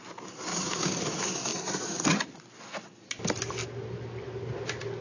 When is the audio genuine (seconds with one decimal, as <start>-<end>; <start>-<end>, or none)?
0.0-0.5; 1.0-5.0